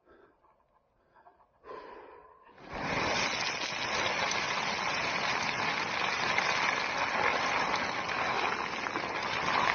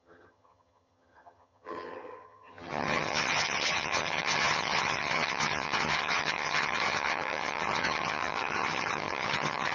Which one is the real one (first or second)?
first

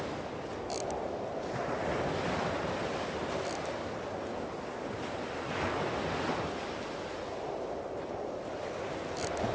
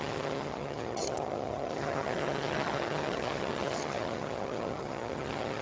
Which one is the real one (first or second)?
first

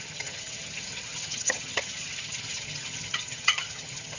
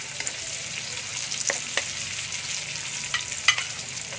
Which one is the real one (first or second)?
second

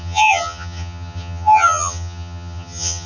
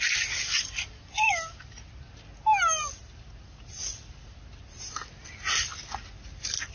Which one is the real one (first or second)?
second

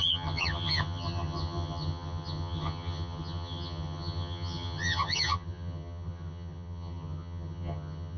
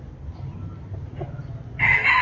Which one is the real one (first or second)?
second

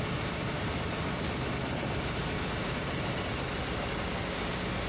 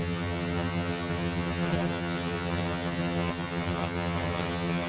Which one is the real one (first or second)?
first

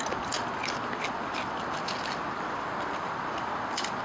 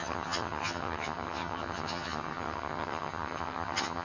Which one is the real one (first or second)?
first